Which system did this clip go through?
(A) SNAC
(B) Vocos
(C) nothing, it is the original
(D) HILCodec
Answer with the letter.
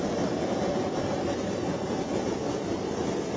C